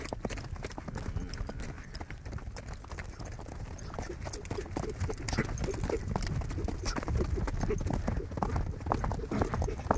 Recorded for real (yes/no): yes